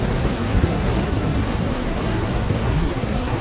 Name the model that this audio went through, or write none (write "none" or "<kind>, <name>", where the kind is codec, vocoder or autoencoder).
codec, SNAC